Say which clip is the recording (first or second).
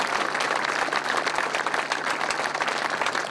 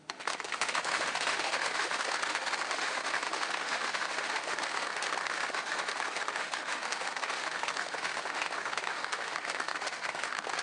first